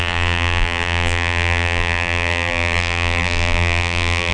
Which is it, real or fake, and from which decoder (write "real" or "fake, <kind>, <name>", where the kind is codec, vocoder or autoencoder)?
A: fake, vocoder, BigVGAN v2